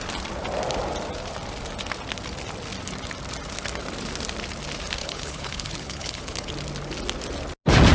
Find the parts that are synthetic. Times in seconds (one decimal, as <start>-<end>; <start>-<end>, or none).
5.0-6.5